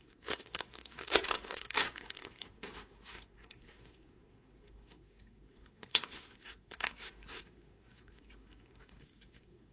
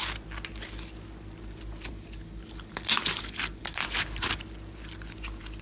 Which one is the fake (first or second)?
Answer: first